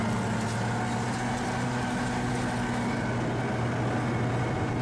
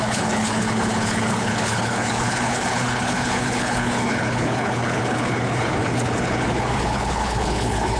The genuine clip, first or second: first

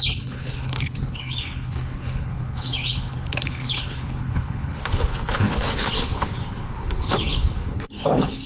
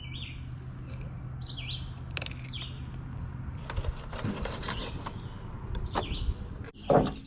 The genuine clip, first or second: second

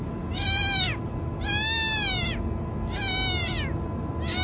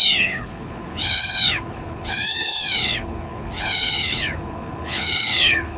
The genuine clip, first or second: first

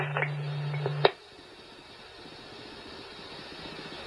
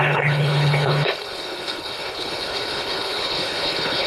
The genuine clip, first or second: first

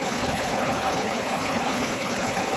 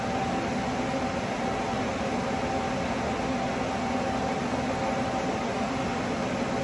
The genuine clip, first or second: second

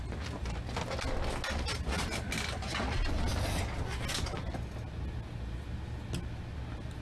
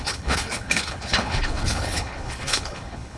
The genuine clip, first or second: first